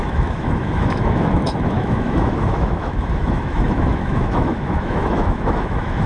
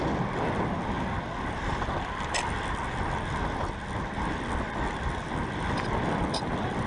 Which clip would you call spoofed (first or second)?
first